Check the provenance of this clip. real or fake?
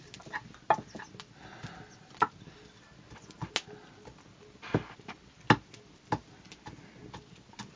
real